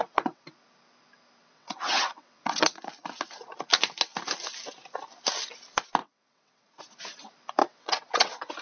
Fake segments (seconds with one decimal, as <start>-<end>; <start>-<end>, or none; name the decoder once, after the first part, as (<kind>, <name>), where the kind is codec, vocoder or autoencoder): 0.0-0.5 (vocoder, WaveNeXt); 1.4-2.8; 6.0-6.8; 7.6-8.6